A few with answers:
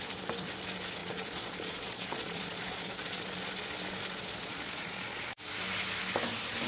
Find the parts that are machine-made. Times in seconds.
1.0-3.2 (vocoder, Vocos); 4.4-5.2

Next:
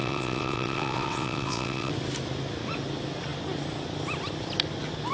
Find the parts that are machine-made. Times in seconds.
0.0-1.9 (vocoder, WaveNeXt)

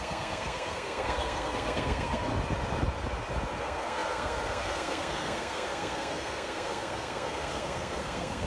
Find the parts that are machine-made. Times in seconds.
0.0-2.3 (codec, SNAC); 3.6-8.5